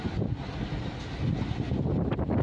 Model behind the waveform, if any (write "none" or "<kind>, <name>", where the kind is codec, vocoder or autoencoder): none